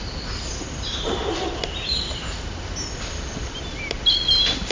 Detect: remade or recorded recorded